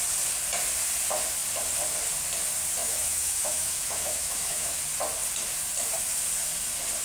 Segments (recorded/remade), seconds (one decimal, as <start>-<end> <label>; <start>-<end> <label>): 0.0-2.8 recorded; 2.8-4.8 remade; 4.8-7.0 recorded